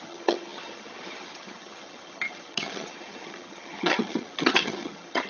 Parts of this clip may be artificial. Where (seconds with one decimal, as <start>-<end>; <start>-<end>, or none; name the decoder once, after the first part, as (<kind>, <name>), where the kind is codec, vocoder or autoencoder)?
0.0-5.3 (vocoder, HiFi-GAN)